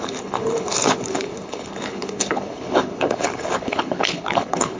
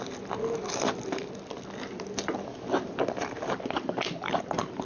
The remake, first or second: first